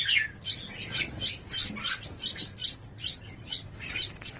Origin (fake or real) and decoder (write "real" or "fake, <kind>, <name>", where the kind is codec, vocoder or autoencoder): real